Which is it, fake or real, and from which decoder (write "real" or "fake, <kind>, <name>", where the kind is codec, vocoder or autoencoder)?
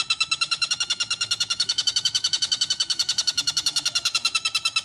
fake, autoencoder, DAC-VAE